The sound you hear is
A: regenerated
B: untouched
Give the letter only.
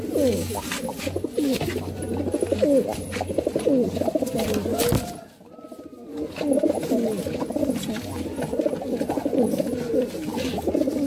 B